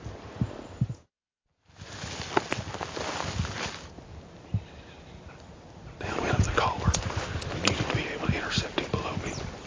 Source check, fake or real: real